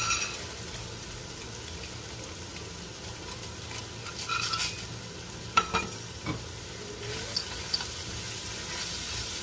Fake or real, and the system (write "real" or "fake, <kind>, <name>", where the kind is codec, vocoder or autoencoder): real